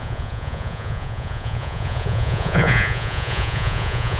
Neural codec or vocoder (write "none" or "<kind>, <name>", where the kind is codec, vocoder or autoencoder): vocoder, Vocos